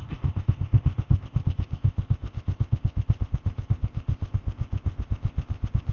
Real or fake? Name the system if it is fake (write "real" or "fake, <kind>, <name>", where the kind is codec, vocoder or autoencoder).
fake, codec, ZipCodec